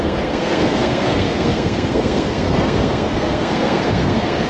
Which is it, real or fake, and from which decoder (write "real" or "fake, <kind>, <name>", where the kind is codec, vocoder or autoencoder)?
fake, codec, SNAC